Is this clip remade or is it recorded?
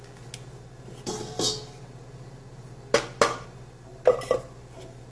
recorded